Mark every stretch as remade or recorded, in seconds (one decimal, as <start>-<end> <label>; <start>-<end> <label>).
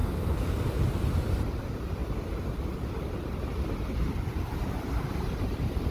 0.0-5.9 recorded